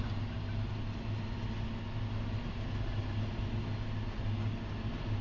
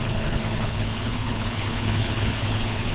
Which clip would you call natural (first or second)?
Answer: first